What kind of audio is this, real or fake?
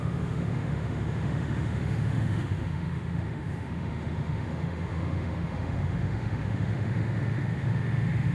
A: fake